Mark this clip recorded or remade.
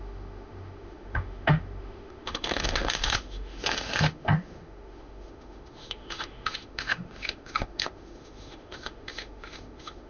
remade